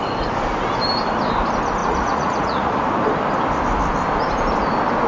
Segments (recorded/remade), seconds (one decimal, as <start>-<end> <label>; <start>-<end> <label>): 0.0-1.8 recorded; 1.8-2.8 remade; 2.8-5.1 recorded